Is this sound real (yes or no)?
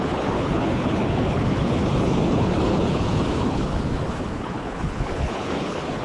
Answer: no